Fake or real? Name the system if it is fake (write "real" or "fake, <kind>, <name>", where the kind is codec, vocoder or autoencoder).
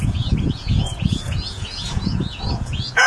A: fake, vocoder, Vocos